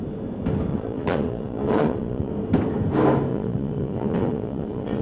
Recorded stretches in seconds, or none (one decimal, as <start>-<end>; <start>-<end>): 0.0-0.7; 2.3-3.3